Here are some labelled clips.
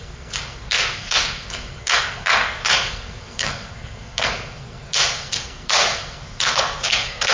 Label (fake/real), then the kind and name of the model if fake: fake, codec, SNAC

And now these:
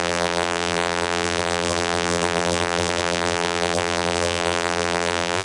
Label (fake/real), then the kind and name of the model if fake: fake, vocoder, BigVGAN v2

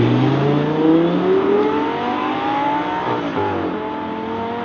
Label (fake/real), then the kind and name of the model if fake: real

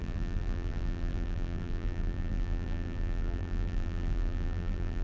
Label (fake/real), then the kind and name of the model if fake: fake, vocoder, BigVGAN v2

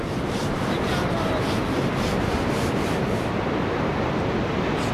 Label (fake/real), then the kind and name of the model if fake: real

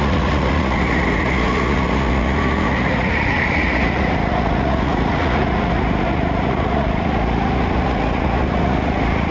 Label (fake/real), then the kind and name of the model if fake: fake, vocoder, Vocos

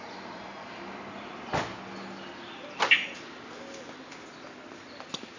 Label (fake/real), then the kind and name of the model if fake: real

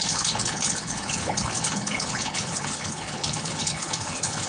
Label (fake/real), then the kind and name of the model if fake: fake, codec, HILCodec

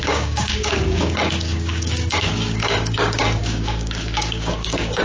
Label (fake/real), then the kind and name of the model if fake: fake, codec, DAC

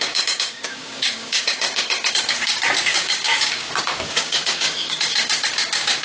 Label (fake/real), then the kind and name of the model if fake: fake, codec, DAC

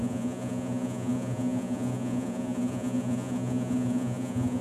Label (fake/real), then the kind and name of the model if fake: fake, vocoder, Vocos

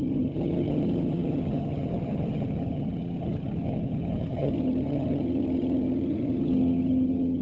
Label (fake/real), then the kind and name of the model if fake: fake, vocoder, HiFi-GAN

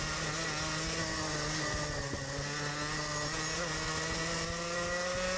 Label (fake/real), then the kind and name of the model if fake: real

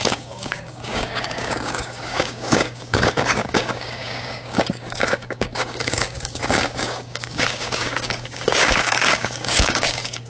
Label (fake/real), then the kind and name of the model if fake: fake, codec, DAC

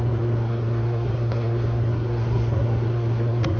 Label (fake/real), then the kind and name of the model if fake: fake, codec, SNAC